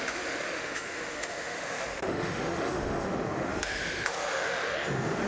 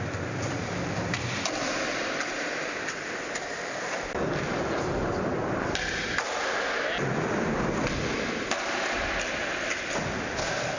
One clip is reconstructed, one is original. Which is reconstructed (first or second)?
first